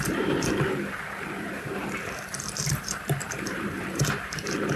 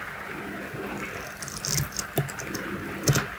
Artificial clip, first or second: first